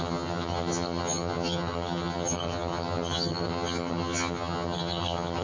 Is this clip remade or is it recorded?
remade